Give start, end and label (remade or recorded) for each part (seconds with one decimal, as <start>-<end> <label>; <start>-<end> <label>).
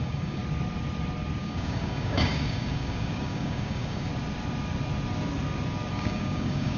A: 0.0-0.4 remade; 0.4-1.4 recorded; 1.4-4.1 remade; 4.1-5.9 recorded; 5.9-6.8 remade